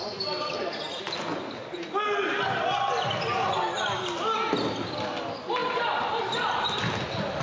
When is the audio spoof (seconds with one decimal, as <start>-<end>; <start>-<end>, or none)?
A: none